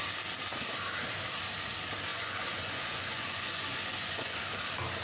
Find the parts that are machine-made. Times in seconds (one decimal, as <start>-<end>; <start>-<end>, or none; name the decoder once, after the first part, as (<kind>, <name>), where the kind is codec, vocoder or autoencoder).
2.1-4.4 (vocoder, Vocos)

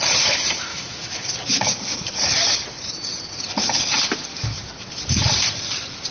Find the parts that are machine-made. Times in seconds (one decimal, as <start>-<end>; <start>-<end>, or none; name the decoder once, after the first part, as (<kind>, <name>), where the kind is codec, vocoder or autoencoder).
0.7-2.1 (autoencoder, DAC-VAE); 4.3-5.0